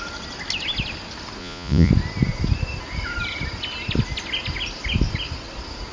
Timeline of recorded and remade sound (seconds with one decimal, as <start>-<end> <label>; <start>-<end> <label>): 0.0-1.4 recorded; 1.4-1.9 remade; 1.9-5.9 recorded